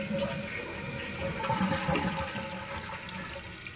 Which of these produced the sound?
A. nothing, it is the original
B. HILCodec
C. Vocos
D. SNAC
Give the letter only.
A